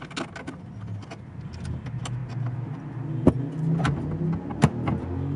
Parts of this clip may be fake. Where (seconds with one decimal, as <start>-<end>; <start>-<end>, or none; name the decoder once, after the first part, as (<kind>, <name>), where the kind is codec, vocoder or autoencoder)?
none